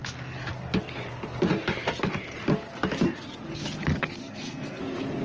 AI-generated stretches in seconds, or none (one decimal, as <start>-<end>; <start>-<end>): 4.2-4.8